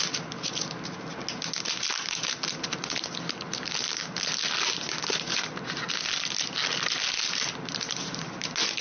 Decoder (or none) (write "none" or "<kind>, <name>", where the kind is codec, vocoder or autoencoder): none